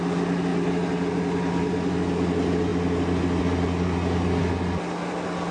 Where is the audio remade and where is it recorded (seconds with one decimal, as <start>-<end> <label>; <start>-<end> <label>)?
0.0-5.5 recorded